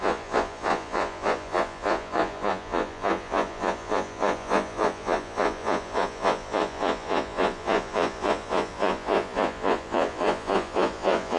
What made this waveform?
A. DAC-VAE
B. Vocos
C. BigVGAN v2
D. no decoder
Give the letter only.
B